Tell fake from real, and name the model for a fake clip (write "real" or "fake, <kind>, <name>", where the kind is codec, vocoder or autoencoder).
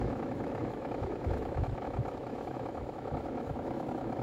fake, autoencoder, DAC-VAE